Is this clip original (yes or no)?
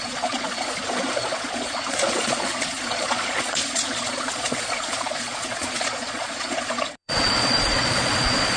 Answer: no